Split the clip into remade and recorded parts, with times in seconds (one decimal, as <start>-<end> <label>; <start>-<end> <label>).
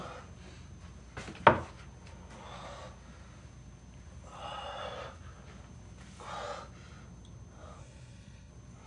0.0-7.8 recorded; 7.8-8.5 remade; 8.5-8.9 recorded